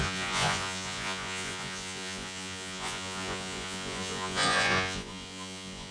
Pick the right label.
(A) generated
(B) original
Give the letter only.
A